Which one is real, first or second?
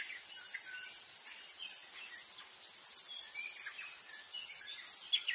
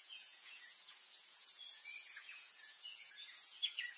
first